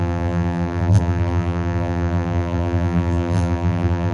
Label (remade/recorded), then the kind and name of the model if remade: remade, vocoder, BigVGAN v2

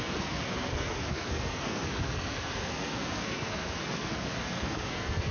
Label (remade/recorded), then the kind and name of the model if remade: remade, codec, SNAC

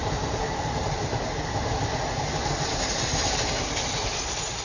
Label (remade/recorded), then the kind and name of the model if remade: recorded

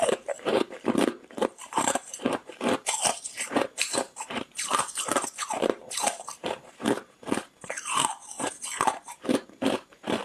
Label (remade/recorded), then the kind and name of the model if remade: remade, vocoder, BigVGAN v2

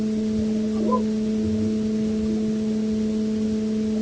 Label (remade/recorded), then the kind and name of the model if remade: recorded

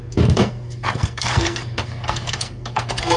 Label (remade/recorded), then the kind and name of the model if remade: remade, codec, SNAC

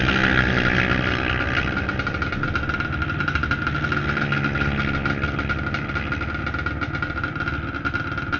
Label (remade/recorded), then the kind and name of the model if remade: recorded